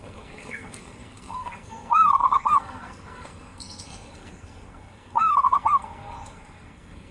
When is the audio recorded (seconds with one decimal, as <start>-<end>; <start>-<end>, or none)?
none